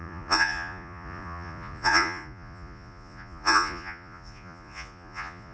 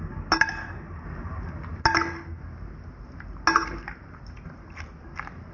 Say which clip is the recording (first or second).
second